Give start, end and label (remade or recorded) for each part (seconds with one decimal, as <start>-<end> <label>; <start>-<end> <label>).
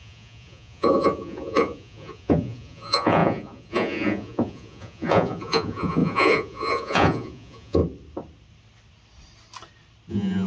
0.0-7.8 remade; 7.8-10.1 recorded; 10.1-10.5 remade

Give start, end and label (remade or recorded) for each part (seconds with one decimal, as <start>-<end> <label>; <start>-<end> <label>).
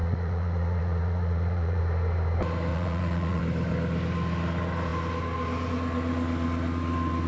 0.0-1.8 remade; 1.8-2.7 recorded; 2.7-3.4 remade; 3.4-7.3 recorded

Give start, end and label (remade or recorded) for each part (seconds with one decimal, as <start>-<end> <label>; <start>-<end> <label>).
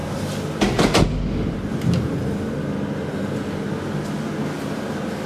0.0-5.3 recorded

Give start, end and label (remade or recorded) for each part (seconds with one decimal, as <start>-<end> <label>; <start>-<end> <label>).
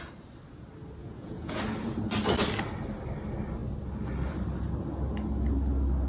0.0-1.0 recorded; 1.0-1.6 remade; 1.6-6.1 recorded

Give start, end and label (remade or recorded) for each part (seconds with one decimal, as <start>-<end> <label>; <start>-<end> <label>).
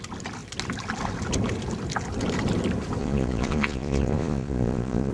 0.0-3.0 recorded; 3.0-5.1 remade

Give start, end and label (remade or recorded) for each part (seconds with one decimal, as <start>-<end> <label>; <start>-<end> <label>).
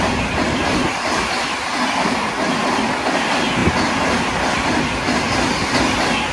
0.0-6.3 recorded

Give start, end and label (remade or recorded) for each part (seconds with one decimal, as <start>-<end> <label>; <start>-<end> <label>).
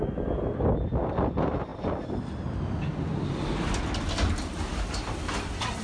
0.0-5.8 recorded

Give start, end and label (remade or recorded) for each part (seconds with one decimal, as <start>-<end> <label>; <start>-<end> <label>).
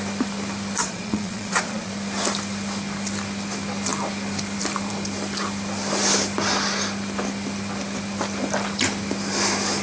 0.0-0.8 recorded; 0.8-1.9 remade; 1.9-9.8 recorded